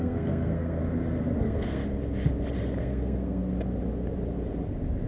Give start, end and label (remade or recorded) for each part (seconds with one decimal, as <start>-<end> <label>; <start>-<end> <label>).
0.0-0.8 remade; 0.8-1.4 recorded; 1.4-1.8 remade; 1.8-2.8 recorded; 2.8-3.5 remade; 3.5-5.1 recorded